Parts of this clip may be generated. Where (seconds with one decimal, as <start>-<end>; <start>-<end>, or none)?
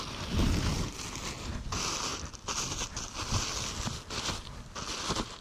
none